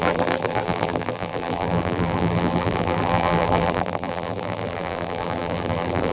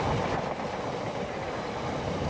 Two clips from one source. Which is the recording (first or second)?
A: second